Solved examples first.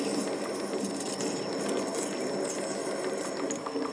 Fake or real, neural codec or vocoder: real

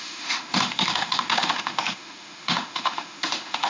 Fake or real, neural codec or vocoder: fake, autoencoder, DAC-VAE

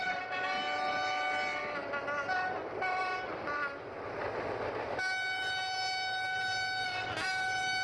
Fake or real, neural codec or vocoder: real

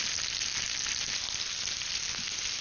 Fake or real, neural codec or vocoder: real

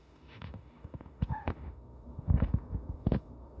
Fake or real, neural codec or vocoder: fake, autoencoder, DAC-VAE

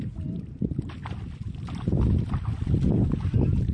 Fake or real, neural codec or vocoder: real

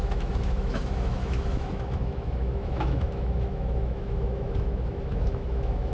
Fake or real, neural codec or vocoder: fake, autoencoder, DAC-VAE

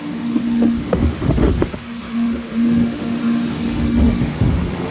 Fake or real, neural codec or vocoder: fake, autoencoder, DAC-VAE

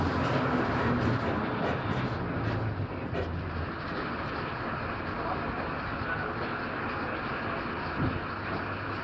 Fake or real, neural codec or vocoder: real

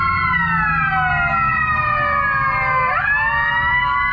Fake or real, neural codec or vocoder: real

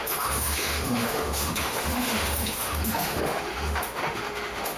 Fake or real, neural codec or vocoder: fake, autoencoder, DAC-VAE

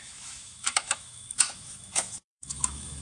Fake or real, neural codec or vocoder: fake, autoencoder, DAC-VAE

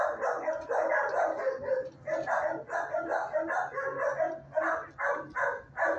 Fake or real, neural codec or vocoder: real